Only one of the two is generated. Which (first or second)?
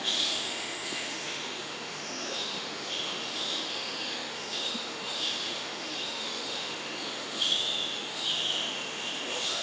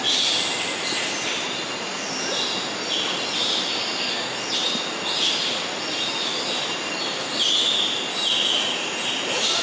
first